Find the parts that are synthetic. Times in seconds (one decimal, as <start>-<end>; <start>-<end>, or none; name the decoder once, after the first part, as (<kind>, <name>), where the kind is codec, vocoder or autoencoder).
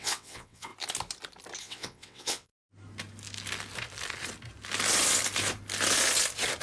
0.0-0.7 (vocoder, WaveNeXt); 1.6-2.5